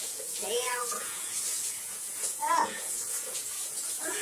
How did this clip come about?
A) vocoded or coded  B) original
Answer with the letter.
A